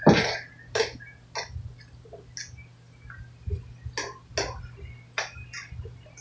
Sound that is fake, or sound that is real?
real